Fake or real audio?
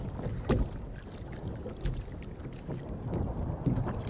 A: real